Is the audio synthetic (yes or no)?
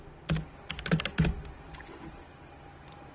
no